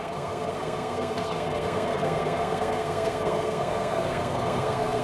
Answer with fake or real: fake